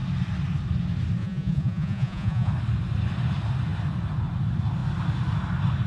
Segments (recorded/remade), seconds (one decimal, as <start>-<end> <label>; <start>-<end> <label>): 0.0-1.2 recorded; 1.2-2.5 remade; 2.5-5.9 recorded